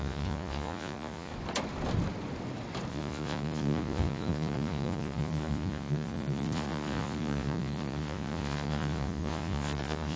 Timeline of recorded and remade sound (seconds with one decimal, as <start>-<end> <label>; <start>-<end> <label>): 0.0-1.3 remade; 1.3-2.9 recorded; 2.9-10.2 remade